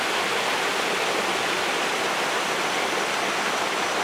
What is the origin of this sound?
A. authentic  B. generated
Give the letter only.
A